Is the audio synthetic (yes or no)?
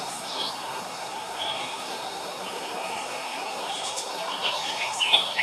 yes